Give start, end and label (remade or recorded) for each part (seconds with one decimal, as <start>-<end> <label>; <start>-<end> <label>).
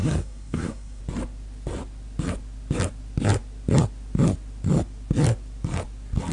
0.0-1.0 remade; 1.0-6.3 recorded